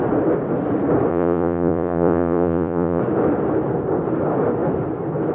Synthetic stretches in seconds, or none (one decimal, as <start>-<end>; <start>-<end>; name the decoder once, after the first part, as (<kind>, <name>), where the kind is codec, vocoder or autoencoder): 1.1-3.0 (vocoder, Vocos)